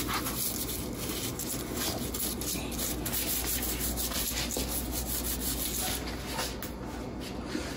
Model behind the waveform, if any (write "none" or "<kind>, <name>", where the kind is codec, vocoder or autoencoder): none